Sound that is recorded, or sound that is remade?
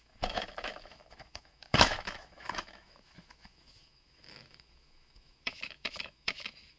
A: remade